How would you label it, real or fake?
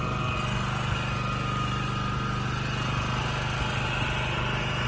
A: real